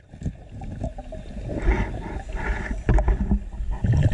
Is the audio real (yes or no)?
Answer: yes